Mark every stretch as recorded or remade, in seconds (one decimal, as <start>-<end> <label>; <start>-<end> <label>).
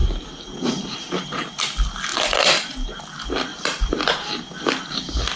0.0-2.1 recorded; 2.1-3.0 remade; 3.0-3.5 recorded; 3.5-4.9 remade; 4.9-5.4 recorded